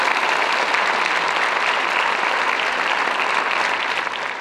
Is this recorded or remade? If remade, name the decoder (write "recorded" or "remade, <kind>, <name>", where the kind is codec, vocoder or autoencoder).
recorded